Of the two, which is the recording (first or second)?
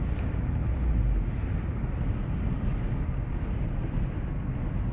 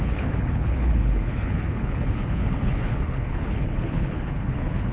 first